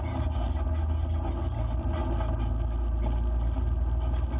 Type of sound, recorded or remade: recorded